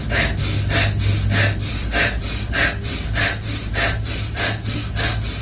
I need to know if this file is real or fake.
real